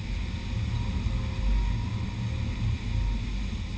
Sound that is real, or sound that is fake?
real